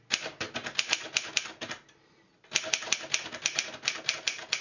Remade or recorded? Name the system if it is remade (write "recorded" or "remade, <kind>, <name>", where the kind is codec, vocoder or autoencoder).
recorded